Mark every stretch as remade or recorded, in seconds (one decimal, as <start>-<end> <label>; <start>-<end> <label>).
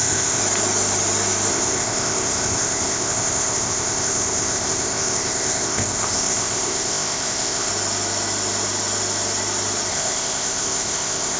0.0-0.4 remade; 0.4-1.5 recorded; 1.5-7.7 remade; 7.7-9.9 recorded; 9.9-11.4 remade